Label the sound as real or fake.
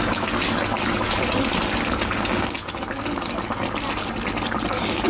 real